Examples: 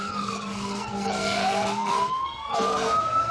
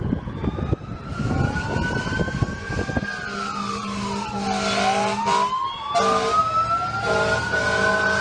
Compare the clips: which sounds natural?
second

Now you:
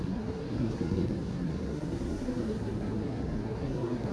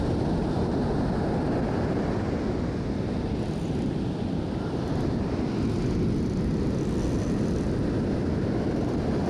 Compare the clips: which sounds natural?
second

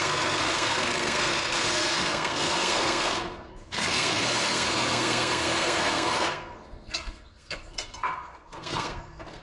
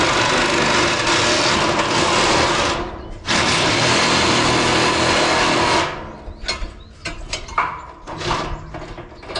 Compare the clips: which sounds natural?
second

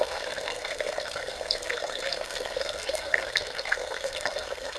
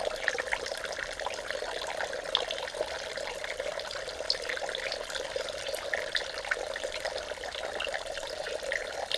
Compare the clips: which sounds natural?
second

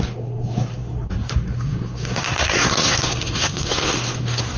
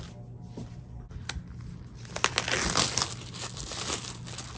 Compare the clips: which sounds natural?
second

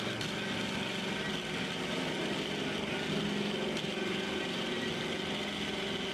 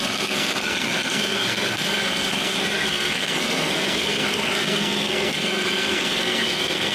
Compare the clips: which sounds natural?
first